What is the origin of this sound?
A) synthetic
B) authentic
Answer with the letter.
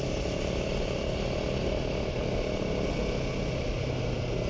B